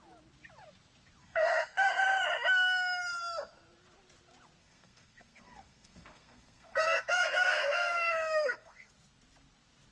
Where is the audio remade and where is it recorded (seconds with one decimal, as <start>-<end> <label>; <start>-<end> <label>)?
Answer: 0.0-1.2 recorded; 1.2-2.0 remade; 2.0-4.6 recorded; 4.6-8.9 remade; 8.9-9.9 recorded